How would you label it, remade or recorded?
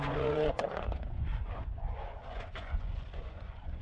remade